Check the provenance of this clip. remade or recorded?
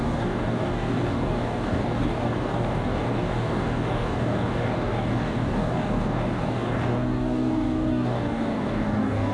remade